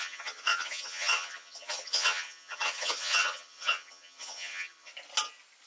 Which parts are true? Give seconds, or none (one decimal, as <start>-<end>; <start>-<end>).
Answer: 4.9-5.7